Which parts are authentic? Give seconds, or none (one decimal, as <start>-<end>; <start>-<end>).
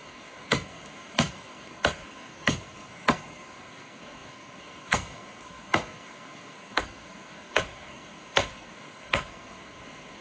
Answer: none